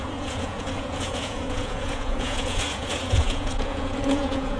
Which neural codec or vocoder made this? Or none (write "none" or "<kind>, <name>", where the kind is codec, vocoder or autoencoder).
vocoder, Vocos